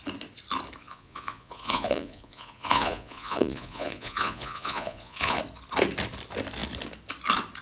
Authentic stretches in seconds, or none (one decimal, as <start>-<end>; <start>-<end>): 0.0-0.8; 5.4-7.6